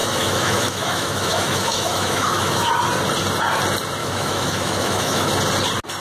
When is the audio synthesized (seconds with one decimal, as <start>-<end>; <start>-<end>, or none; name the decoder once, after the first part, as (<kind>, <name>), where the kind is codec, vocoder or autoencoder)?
0.0-2.7 (autoencoder, DAC-VAE); 4.0-5.3